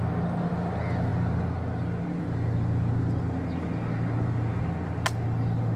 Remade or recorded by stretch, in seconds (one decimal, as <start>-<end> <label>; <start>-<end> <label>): 0.0-5.8 recorded